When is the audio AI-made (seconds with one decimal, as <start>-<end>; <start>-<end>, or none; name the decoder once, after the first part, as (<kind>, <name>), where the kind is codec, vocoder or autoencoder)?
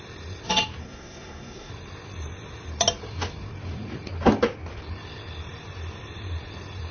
0.8-1.7 (codec, SNAC)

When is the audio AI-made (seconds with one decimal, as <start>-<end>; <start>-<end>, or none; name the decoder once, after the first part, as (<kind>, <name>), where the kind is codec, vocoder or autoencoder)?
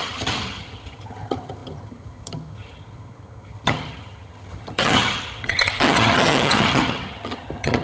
0.0-7.8 (vocoder, HiFi-GAN)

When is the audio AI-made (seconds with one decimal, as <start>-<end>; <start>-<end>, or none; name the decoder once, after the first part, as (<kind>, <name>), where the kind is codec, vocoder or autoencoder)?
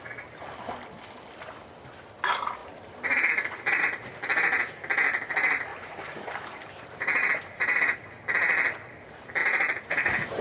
5.7-7.8 (vocoder, BigVGAN v2)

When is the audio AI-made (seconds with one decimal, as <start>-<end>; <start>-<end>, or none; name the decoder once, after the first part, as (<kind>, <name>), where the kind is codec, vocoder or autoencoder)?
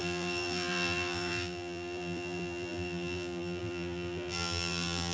0.0-5.1 (vocoder, BigVGAN v2)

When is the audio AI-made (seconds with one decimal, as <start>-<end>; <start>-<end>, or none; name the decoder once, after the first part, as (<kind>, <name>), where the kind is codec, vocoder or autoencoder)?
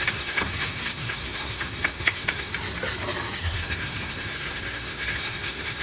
0.0-2.5 (codec, SNAC); 3.4-5.8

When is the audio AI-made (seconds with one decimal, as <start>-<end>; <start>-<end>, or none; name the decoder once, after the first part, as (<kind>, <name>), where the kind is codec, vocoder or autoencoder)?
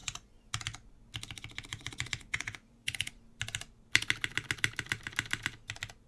0.0-0.5 (vocoder, Vocos); 1.7-3.1